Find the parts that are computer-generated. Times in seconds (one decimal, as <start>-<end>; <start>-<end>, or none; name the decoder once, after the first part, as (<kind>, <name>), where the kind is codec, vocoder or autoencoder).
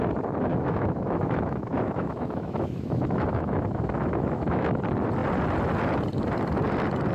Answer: 0.5-4.8 (autoencoder, DAC-VAE)